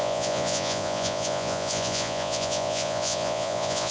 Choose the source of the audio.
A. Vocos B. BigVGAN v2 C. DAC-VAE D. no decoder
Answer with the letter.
A